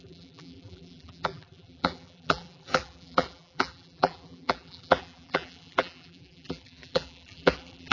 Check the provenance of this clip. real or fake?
fake